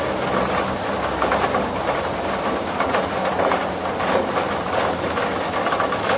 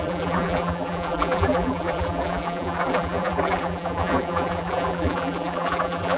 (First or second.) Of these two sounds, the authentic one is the first